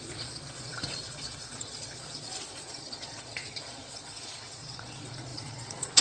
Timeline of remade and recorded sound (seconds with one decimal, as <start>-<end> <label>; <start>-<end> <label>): 0.0-6.0 remade